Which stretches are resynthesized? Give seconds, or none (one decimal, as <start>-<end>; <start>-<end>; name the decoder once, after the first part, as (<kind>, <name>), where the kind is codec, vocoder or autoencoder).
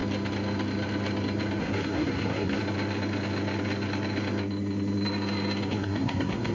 1.6-2.6 (codec, SNAC); 5.7-6.5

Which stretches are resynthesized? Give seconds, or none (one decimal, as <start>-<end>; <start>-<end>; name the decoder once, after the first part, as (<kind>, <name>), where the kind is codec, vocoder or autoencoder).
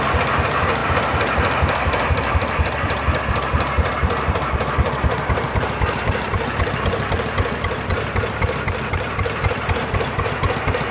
0.0-10.9 (vocoder, BigVGAN v2)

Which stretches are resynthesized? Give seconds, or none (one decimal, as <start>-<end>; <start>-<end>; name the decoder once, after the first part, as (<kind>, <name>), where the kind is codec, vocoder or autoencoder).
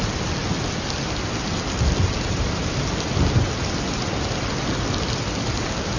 none